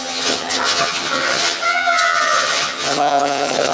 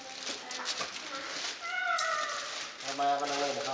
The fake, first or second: first